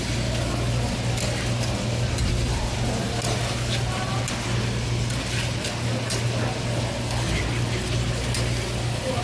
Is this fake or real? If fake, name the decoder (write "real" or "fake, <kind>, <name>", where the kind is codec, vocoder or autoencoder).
real